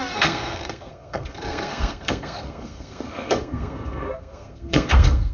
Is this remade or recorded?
remade